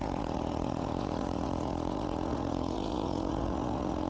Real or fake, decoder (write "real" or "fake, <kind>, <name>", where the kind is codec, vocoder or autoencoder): fake, vocoder, Vocos